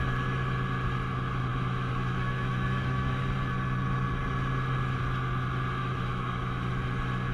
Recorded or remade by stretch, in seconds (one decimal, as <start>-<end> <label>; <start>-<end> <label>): 0.0-1.5 recorded; 1.5-3.2 remade; 3.2-5.8 recorded; 5.8-6.7 remade; 6.7-7.3 recorded